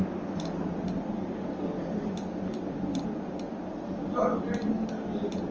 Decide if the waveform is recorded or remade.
recorded